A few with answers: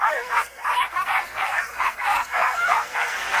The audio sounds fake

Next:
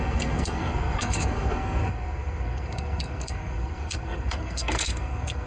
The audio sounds fake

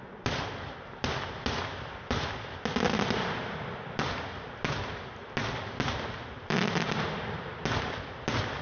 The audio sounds real